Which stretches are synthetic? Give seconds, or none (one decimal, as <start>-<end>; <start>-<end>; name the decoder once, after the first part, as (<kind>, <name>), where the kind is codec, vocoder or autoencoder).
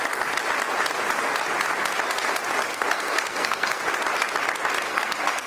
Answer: 2.7-3.8 (codec, SNAC); 4.9-5.5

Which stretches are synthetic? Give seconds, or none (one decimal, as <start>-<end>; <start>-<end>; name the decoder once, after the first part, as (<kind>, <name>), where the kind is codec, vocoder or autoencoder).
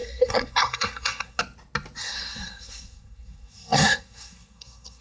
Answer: 0.0-1.4 (codec, SNAC); 2.0-5.0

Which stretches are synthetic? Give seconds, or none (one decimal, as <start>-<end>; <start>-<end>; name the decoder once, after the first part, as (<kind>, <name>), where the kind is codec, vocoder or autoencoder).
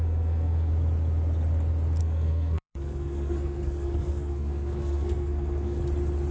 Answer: 0.0-0.7 (codec, SNAC); 2.0-5.8